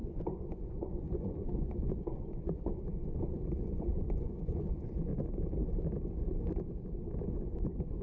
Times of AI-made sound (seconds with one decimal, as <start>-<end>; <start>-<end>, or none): 0.0-5.1; 7.3-8.0